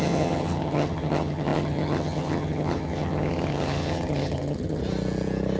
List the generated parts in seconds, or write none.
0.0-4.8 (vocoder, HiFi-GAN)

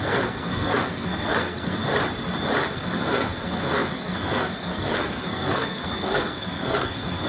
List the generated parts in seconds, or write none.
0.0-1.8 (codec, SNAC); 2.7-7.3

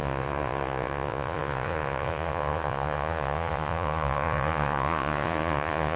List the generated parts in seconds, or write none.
0.0-6.0 (vocoder, Vocos)

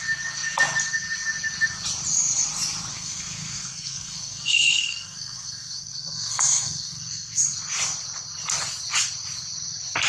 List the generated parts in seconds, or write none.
2.9-7.4 (codec, SNAC)

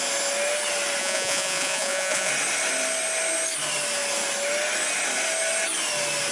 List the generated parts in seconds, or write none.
1.0-2.3 (vocoder, Vocos)

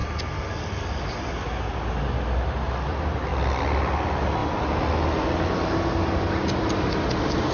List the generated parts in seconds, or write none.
none